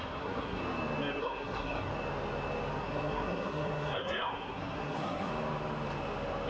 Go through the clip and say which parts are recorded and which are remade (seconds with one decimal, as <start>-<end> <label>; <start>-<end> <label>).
0.0-0.6 remade; 0.6-1.2 recorded; 1.2-1.9 remade; 1.9-2.8 recorded; 2.8-5.3 remade; 5.3-6.5 recorded